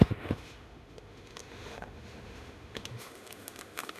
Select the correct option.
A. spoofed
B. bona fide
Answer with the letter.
A